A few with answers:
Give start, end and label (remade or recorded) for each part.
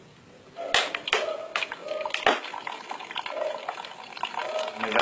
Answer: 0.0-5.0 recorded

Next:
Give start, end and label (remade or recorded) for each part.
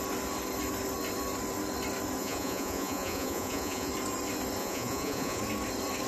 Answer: 0.0-2.2 recorded; 2.2-3.9 remade; 3.9-4.6 recorded; 4.6-5.4 remade; 5.4-6.1 recorded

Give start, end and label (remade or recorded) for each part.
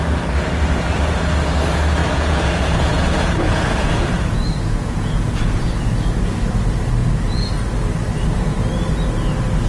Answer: 0.0-2.0 recorded; 2.0-5.7 remade; 5.7-7.0 recorded; 7.0-7.5 remade; 7.5-9.7 recorded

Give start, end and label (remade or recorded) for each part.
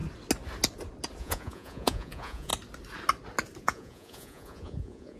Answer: 0.0-1.2 recorded; 1.2-2.5 remade; 2.5-3.6 recorded; 3.6-5.2 remade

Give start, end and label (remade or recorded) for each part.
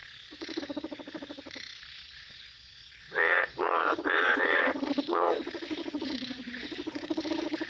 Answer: 0.0-7.7 remade